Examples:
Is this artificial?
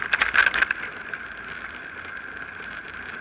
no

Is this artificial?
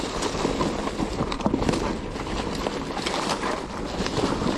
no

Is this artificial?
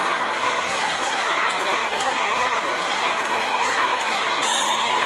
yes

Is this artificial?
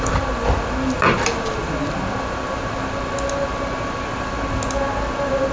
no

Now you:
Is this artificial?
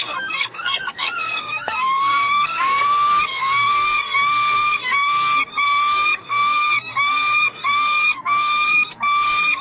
yes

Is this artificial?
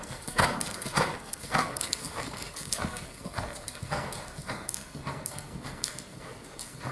yes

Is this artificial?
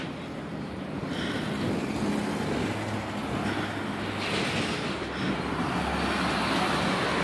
no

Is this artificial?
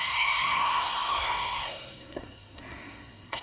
yes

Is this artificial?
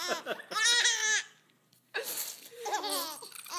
no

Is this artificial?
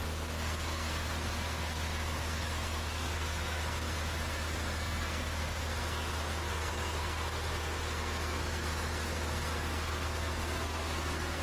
yes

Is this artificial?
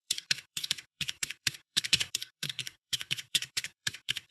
yes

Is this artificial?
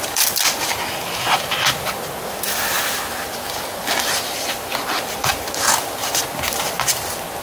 no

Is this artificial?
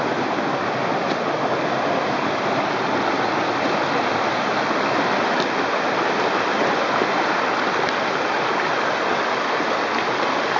no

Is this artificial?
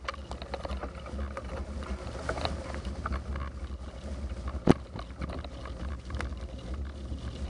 no